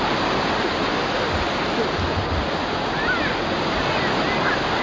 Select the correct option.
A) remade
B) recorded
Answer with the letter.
B